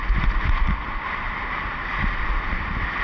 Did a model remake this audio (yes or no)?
no